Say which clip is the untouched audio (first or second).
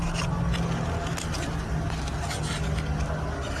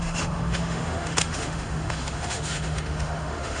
first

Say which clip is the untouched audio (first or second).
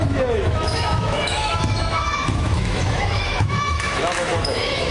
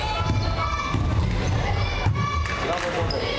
second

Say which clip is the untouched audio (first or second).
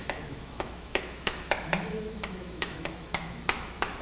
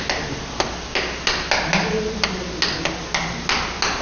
second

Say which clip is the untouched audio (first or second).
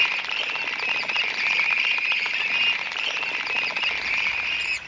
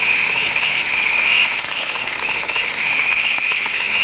first